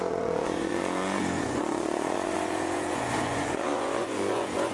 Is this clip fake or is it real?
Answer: fake